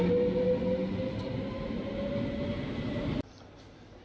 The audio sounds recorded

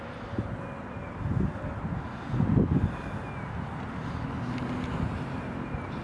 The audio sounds recorded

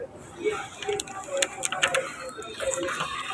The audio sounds recorded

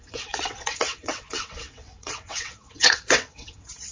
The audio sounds remade